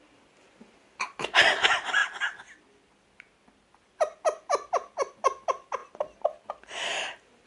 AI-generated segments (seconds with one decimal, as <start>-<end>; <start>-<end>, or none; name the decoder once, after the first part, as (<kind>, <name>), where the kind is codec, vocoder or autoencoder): none